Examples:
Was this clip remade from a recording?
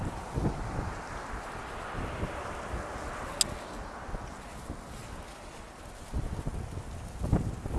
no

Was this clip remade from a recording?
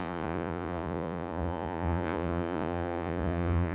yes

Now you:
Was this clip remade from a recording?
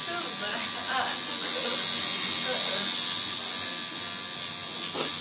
no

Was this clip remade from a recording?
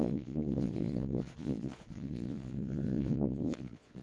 yes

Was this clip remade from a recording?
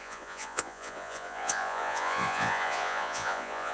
yes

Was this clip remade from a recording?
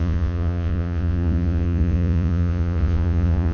yes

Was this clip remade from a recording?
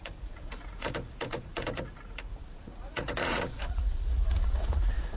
yes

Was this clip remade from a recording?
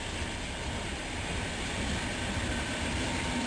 no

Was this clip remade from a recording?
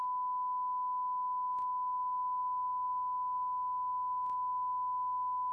no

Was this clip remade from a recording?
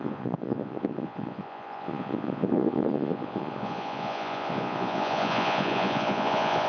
yes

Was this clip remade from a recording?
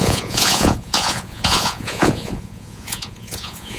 yes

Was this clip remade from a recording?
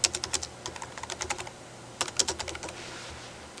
no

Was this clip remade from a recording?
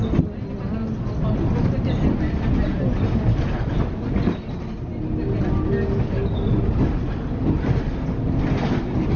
no